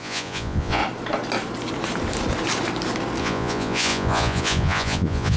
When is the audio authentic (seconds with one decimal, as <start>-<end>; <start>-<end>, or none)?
0.8-3.2